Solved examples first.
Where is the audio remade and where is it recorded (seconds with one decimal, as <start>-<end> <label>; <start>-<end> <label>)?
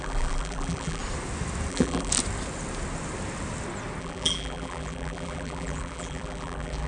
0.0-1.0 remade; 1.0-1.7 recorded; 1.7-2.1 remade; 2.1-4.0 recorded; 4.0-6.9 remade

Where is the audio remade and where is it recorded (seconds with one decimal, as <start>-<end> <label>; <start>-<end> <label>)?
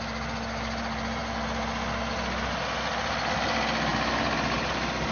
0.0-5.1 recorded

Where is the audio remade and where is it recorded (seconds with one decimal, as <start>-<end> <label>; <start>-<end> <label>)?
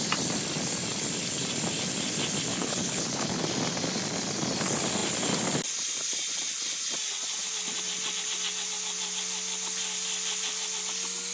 0.0-2.5 recorded; 2.5-3.4 remade; 3.4-11.3 recorded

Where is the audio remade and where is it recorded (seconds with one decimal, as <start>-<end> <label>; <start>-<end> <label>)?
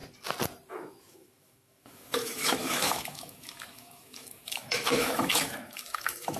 0.0-0.7 recorded; 0.7-6.4 remade